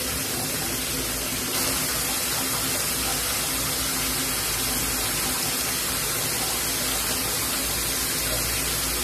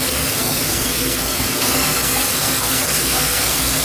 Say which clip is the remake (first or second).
second